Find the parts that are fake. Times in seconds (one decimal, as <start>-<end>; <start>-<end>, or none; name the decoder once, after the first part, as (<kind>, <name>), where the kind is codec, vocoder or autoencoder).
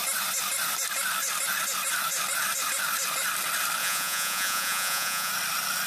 3.8-5.3 (vocoder, Vocos)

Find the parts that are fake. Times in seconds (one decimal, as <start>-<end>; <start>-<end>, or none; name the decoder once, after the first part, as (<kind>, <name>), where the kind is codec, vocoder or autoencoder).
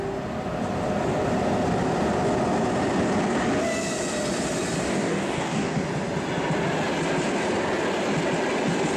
4.9-5.8 (codec, DAC)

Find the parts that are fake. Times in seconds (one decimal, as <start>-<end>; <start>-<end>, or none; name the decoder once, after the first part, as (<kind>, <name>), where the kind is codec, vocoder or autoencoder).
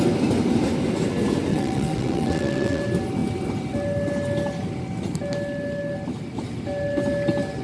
1.5-2.8 (vocoder, WaveNeXt)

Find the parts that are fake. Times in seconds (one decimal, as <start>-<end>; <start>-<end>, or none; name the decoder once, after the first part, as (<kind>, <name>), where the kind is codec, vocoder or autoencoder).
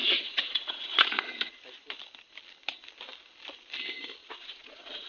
0.0-1.6 (vocoder, Vocos); 4.2-5.1